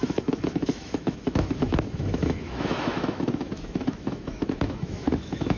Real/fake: fake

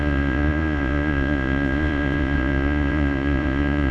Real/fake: fake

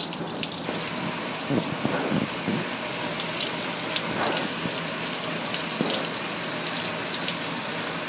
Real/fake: real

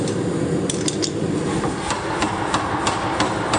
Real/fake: real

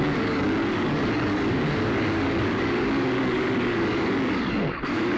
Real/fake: fake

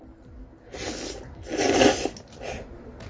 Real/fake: real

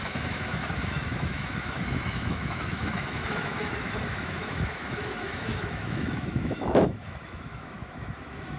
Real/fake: fake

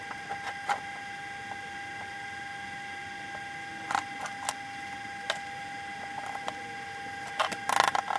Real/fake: real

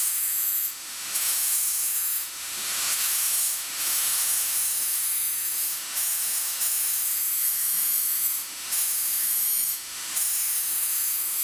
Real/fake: fake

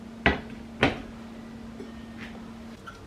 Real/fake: real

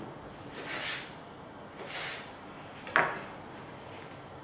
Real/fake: real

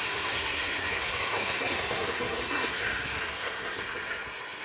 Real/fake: fake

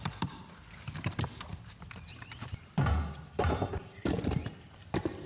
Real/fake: fake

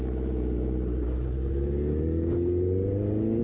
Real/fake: real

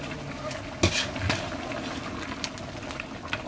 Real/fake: real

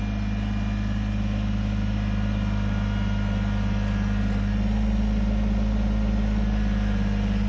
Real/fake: real